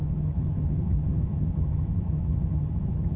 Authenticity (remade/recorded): remade